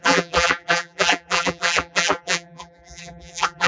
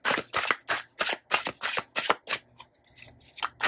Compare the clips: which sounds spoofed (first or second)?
first